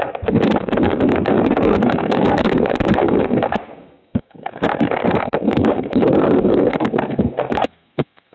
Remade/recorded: remade